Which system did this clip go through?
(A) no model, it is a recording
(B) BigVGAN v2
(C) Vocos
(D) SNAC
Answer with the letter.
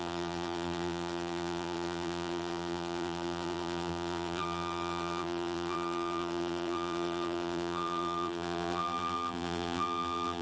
B